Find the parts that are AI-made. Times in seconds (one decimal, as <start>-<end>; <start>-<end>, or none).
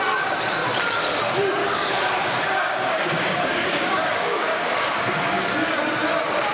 1.6-5.5